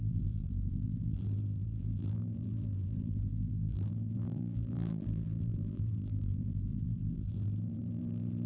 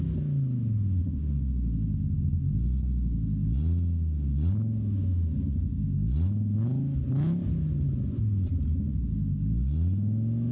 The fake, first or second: first